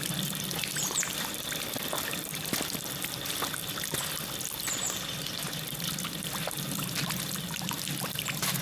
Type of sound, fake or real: real